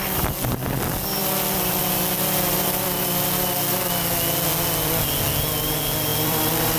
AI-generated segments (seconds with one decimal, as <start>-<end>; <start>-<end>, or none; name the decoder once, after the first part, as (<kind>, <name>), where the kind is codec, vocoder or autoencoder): 1.2-1.8 (vocoder, BigVGAN v2); 6.1-6.8